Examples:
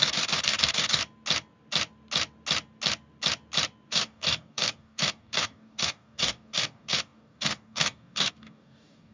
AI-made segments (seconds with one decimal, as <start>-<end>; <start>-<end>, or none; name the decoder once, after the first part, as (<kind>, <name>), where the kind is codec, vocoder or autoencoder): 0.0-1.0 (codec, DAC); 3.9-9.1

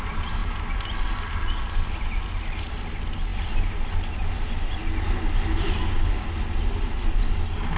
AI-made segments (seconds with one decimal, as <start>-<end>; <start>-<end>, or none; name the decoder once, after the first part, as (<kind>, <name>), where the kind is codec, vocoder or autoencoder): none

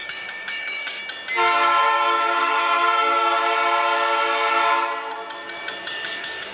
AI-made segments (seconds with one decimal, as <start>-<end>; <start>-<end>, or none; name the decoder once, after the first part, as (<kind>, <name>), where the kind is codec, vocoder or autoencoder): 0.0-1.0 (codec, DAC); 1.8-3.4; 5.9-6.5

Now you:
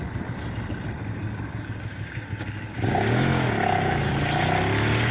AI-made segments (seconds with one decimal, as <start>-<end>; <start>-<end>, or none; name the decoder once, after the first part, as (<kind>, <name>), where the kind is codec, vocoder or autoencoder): 1.0-4.1 (codec, DAC)

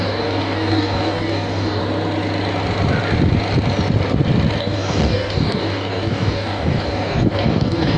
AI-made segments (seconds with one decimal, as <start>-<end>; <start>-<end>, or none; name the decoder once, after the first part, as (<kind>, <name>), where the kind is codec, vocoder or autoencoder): 0.0-1.8 (codec, DAC); 4.6-8.0

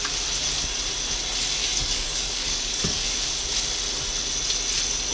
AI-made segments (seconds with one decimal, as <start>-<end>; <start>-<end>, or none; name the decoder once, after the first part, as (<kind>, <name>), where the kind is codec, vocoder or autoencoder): 1.6-3.2 (codec, DAC)

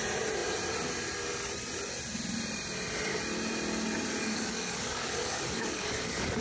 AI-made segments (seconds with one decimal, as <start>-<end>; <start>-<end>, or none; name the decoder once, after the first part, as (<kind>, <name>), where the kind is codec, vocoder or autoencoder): 4.2-6.4 (codec, DAC)